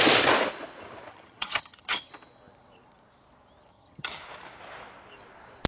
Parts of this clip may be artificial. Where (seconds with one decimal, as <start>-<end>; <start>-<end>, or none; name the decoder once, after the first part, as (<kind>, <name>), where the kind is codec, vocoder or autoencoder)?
1.1-2.1 (vocoder, HiFi-GAN); 3.7-4.2